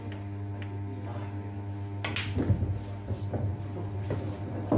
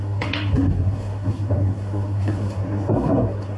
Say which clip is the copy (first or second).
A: second